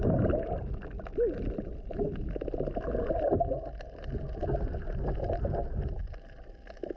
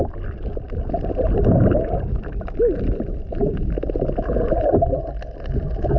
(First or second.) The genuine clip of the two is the first